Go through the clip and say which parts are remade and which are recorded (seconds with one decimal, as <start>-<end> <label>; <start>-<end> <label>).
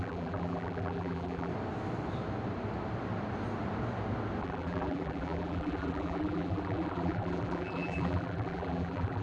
0.0-1.5 remade; 1.5-4.4 recorded; 4.4-9.2 remade